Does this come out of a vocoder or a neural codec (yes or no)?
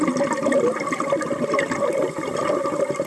no